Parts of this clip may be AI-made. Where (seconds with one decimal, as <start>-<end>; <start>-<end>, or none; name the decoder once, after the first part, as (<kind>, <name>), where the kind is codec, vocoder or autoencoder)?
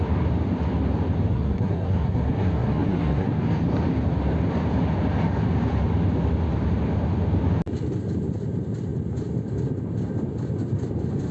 1.3-3.3 (codec, SNAC)